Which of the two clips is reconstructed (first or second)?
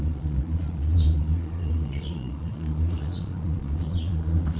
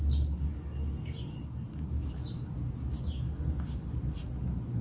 first